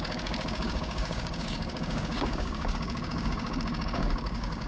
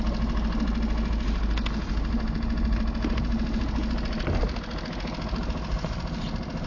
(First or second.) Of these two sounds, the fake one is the first